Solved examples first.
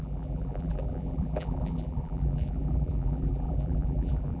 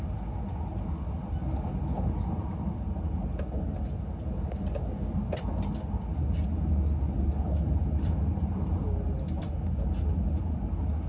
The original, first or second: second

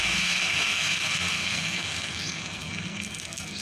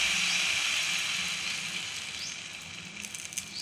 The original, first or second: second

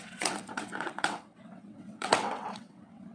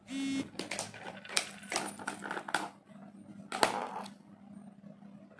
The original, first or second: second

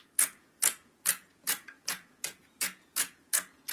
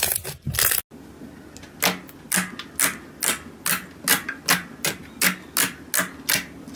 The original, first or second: second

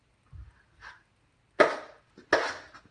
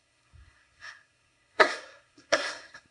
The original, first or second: first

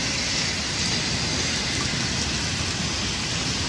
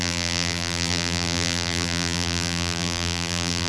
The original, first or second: first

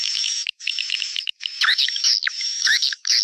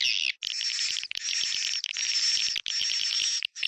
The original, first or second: second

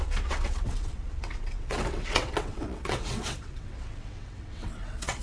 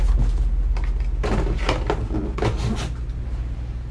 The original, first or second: second